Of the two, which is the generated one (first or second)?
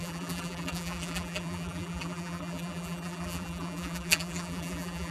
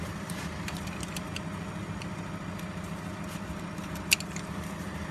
first